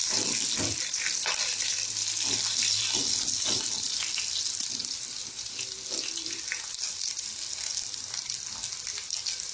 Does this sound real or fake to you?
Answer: real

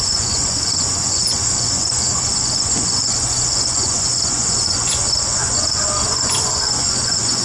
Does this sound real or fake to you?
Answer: fake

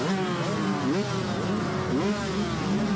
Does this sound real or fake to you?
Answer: real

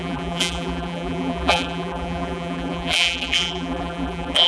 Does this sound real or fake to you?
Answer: fake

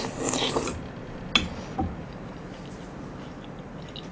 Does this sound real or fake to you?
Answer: real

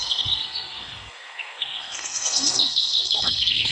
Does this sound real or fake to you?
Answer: fake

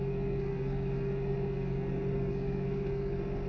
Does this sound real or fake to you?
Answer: fake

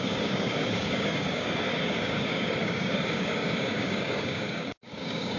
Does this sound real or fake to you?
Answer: fake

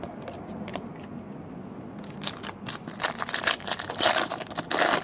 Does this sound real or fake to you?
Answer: real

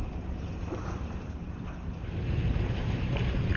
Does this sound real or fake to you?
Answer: fake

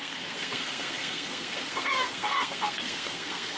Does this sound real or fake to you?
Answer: fake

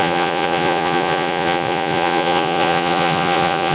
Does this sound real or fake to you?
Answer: fake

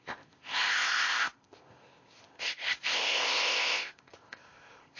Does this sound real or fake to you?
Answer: fake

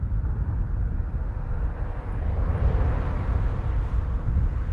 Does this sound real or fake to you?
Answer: real